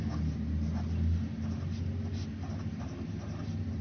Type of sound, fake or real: real